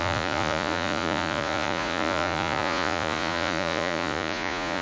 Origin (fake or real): fake